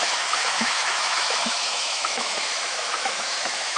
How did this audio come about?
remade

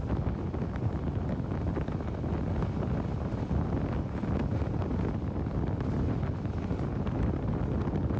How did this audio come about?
recorded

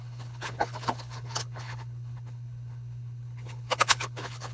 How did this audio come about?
remade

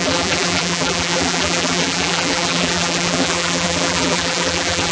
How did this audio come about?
remade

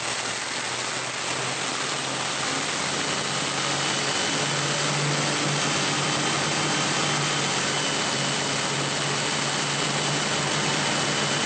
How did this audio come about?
recorded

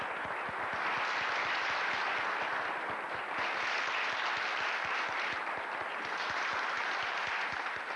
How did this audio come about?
recorded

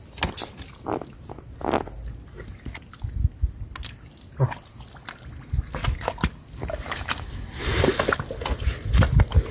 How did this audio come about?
recorded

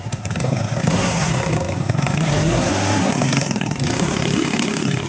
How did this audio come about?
remade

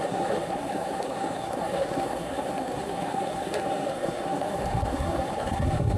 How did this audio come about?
remade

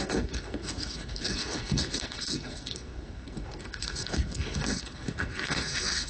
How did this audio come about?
remade